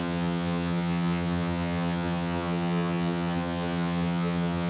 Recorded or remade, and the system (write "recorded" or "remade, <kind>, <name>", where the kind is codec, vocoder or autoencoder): remade, vocoder, HiFi-GAN